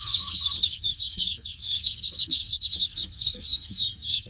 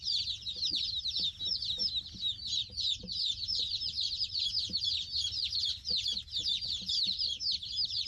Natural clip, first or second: second